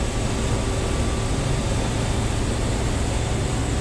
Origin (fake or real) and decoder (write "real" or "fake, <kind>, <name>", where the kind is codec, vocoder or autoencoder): real